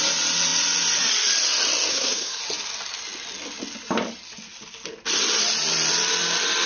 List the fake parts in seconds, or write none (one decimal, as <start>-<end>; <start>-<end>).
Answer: 1.9-2.4